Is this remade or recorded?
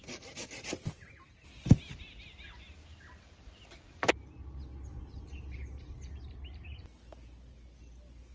recorded